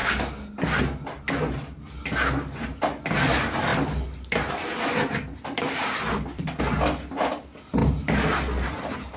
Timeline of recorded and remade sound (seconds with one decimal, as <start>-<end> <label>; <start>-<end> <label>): 0.0-3.7 recorded; 3.7-6.6 remade; 6.6-9.2 recorded